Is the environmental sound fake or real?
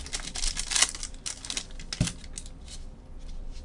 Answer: real